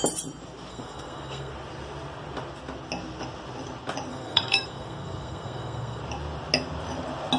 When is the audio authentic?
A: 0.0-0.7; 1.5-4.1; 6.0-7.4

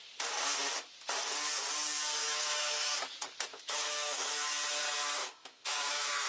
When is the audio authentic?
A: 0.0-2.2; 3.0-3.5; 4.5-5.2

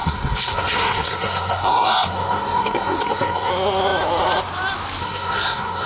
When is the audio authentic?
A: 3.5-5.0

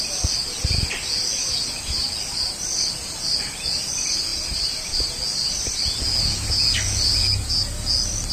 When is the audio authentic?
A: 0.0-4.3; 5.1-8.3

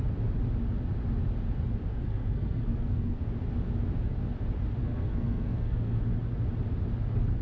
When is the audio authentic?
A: 0.0-1.9; 3.2-4.8; 6.0-7.4

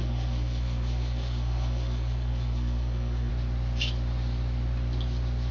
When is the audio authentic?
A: 3.3-5.5

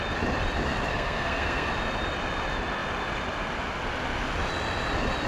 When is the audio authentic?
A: 0.0-0.9; 1.7-5.3